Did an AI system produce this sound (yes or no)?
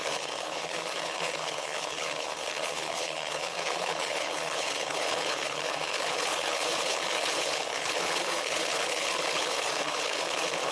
yes